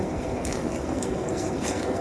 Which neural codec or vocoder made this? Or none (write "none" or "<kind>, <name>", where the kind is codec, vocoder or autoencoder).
codec, SNAC